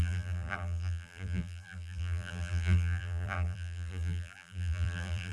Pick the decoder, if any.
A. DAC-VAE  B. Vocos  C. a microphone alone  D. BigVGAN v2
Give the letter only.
D